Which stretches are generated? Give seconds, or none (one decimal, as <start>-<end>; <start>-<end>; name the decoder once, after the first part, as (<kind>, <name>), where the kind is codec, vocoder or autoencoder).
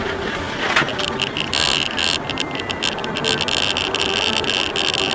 none